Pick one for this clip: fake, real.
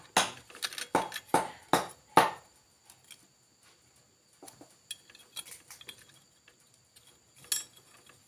real